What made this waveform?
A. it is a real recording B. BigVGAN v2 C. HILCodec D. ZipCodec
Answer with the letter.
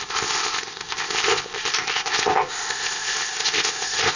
D